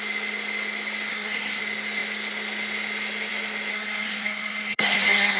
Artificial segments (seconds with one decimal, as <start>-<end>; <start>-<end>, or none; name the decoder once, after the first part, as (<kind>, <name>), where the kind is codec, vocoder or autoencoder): 1.1-1.6 (codec, SNAC); 3.7-5.4